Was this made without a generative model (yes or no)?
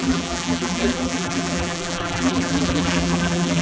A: no